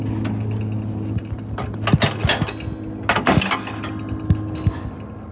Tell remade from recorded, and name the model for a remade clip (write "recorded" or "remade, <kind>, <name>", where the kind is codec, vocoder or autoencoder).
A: recorded